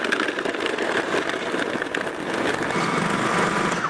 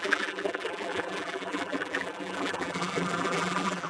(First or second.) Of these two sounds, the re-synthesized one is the second